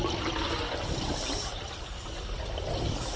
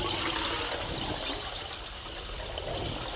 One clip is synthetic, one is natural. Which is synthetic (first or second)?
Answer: first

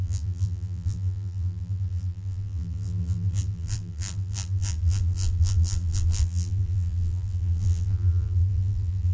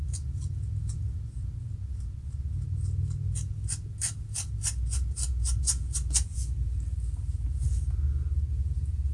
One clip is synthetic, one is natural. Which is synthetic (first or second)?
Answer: first